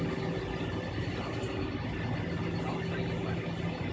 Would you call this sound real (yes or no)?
yes